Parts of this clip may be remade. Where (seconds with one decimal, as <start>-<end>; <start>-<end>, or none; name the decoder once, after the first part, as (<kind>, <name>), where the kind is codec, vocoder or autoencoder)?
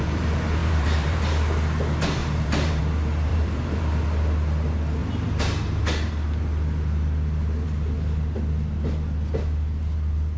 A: 0.6-1.2 (vocoder, BigVGAN v2); 2.2-2.8; 3.3-3.8; 5.0-5.8